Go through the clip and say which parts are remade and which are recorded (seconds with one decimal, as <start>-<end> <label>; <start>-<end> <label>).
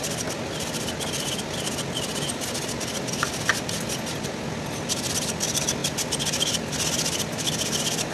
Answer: 0.0-8.1 recorded